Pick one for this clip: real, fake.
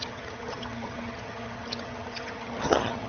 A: fake